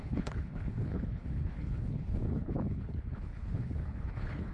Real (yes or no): no